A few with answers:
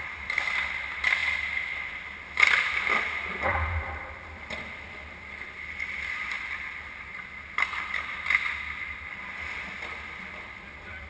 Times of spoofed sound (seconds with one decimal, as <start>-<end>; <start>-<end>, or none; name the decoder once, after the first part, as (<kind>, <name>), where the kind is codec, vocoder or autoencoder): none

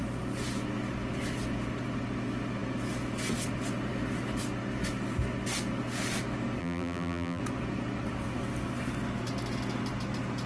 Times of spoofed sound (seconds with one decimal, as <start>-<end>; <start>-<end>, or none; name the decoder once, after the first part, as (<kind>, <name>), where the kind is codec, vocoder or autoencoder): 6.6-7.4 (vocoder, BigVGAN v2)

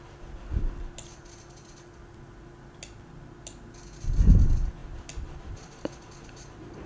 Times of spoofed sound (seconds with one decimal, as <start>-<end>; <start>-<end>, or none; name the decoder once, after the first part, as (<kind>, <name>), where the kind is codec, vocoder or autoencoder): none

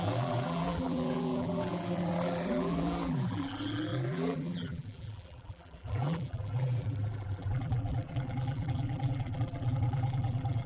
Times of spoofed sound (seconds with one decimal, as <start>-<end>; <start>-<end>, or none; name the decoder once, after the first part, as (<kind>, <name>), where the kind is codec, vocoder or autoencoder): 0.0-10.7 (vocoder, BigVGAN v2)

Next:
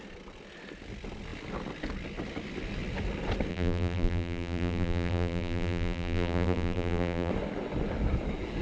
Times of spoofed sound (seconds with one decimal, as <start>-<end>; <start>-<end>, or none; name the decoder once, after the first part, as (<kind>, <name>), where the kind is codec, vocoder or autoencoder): 3.5-7.3 (vocoder, BigVGAN v2)